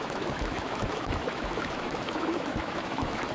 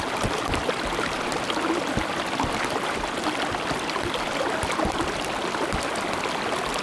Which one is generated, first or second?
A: first